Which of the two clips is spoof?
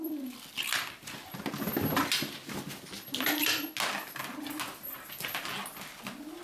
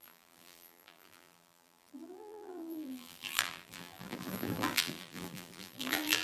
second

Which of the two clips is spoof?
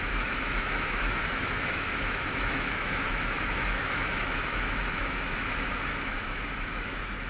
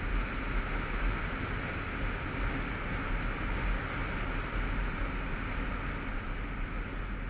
first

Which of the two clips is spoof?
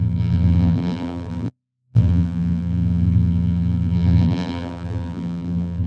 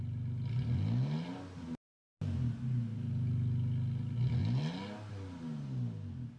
first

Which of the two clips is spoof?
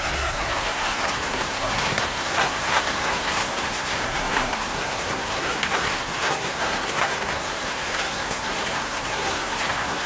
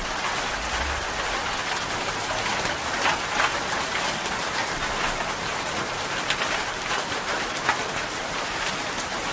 first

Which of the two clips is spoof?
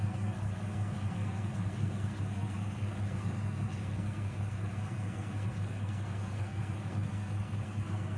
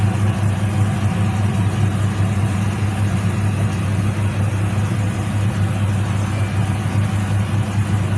first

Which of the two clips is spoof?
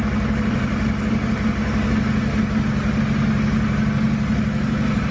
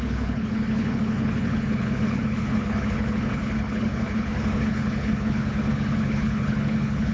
second